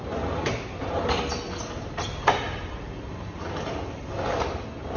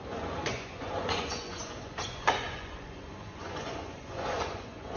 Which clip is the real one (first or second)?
first